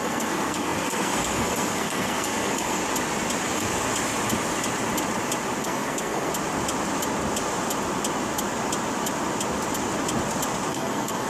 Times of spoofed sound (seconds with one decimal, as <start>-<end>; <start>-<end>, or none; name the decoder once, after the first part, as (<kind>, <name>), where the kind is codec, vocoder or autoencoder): 0.0-2.8 (codec, SNAC); 3.5-3.9; 5.6-6.3; 10.7-11.3